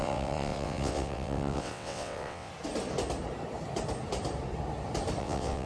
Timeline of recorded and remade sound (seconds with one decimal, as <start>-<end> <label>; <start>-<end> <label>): 0.0-2.5 remade; 2.5-5.2 recorded; 5.2-5.7 remade